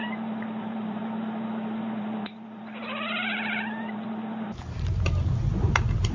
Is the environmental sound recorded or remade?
remade